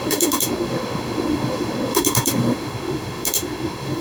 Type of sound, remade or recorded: remade